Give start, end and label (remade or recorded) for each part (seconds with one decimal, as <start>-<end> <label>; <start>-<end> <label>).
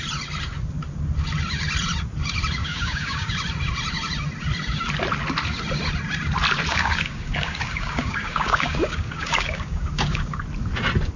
0.0-2.6 recorded; 2.6-3.3 remade; 3.3-6.7 recorded; 6.7-10.4 remade; 10.4-11.2 recorded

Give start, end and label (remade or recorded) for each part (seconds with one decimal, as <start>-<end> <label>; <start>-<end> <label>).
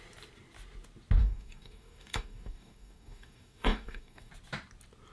0.0-1.2 recorded; 1.2-4.3 remade; 4.3-5.1 recorded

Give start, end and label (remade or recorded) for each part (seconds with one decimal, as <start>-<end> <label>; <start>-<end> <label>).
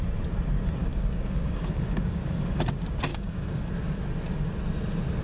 0.0-0.8 recorded; 0.8-2.6 remade; 2.6-3.1 recorded; 3.1-3.7 remade; 3.7-5.2 recorded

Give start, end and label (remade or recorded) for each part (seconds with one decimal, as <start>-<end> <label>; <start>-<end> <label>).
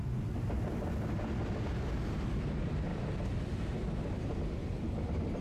0.0-5.4 recorded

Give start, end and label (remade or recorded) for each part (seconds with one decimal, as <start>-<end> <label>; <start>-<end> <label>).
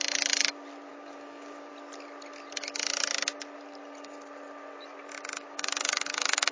0.0-0.9 recorded; 0.9-1.7 remade; 1.7-5.4 recorded; 5.4-6.5 remade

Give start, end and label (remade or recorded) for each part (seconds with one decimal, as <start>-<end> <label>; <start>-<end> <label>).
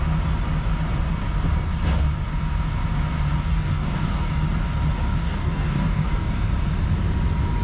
0.0-3.5 recorded; 3.5-4.3 remade; 4.3-5.2 recorded; 5.2-6.1 remade; 6.1-7.6 recorded